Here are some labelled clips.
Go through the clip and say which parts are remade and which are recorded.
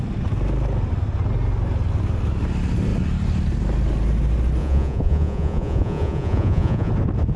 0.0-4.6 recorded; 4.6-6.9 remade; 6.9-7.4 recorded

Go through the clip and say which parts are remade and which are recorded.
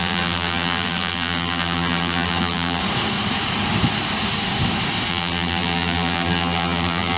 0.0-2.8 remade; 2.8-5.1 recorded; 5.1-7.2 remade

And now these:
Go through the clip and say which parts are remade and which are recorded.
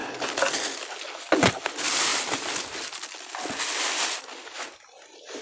0.0-5.4 recorded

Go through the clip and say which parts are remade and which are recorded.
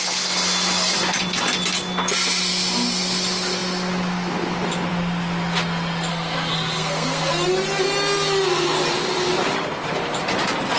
0.0-6.1 recorded; 6.1-7.3 remade; 7.3-10.8 recorded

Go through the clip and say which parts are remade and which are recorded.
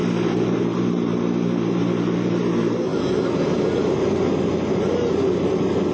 0.0-5.9 recorded